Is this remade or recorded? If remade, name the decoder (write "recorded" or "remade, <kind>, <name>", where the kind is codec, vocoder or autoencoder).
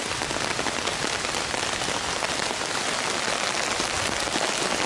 recorded